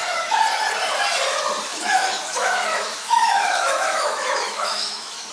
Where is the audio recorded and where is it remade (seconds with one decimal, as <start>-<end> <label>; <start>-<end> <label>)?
0.0-1.7 recorded; 1.7-5.3 remade